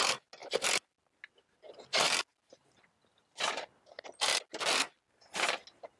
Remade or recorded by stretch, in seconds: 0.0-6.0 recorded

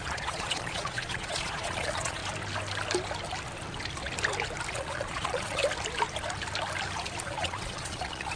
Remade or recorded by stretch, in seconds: 0.0-2.2 remade; 2.2-4.7 recorded; 4.7-5.6 remade; 5.6-7.2 recorded; 7.2-8.4 remade

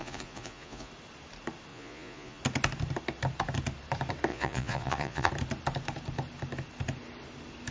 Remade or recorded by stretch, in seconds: 0.0-0.9 remade; 0.9-1.7 recorded; 1.7-2.4 remade; 2.4-4.3 recorded; 4.3-5.3 remade; 5.3-7.7 recorded

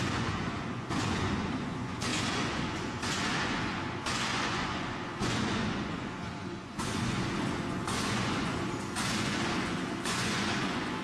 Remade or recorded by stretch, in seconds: 0.0-11.0 remade

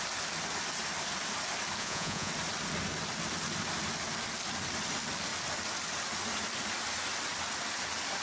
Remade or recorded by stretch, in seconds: 0.0-1.8 recorded; 1.8-2.3 remade; 2.3-8.2 recorded

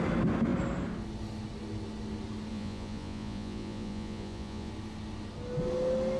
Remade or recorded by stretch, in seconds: 0.0-2.5 recorded; 2.5-4.7 remade; 4.7-6.2 recorded

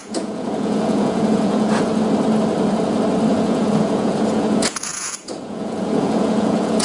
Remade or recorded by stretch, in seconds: 0.0-1.9 remade; 1.9-3.3 recorded; 3.3-6.8 remade